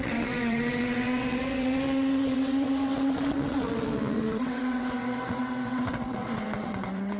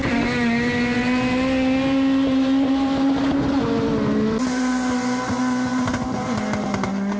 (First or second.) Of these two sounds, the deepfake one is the first